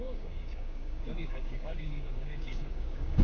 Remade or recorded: remade